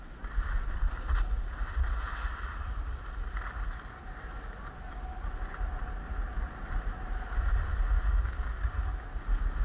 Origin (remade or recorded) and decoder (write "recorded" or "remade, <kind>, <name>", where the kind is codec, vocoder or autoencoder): recorded